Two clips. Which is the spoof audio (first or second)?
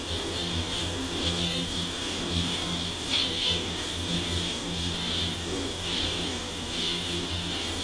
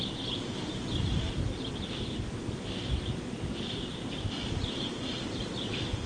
first